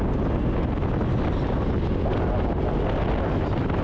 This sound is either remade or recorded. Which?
recorded